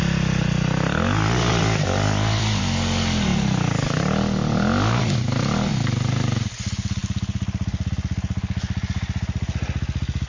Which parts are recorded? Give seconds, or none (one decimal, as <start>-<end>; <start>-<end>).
0.0-1.5; 2.6-10.3